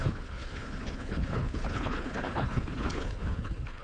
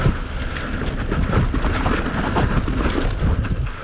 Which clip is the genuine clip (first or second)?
second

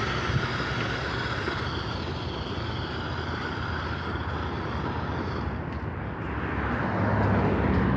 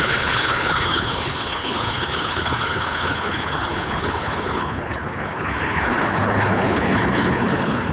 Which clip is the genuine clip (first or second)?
first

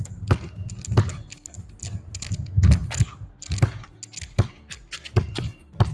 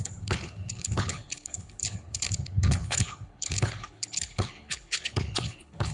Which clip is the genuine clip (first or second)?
first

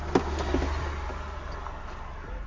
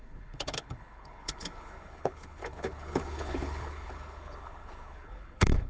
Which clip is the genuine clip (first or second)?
first